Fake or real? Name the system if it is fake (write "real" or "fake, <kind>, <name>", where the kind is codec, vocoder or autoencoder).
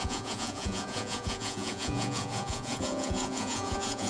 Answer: fake, vocoder, Vocos